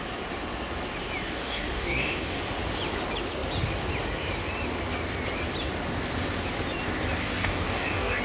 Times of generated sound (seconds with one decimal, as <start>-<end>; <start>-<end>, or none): 1.4-2.4; 7.2-8.2